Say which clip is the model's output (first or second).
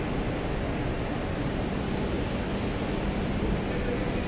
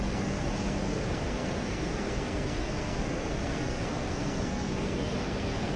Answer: second